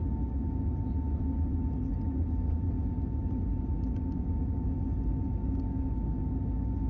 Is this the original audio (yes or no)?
yes